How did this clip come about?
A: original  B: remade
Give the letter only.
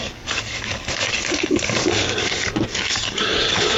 B